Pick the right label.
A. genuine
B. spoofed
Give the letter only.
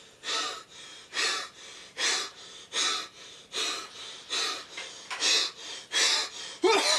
A